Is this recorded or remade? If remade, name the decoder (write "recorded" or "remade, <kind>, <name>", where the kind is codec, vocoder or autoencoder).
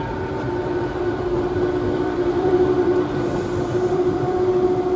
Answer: remade, vocoder, BigVGAN v2